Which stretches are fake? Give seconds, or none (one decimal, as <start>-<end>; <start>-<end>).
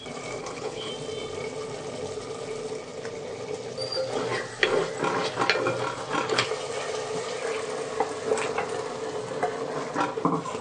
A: 0.4-0.9